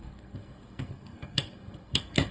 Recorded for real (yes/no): no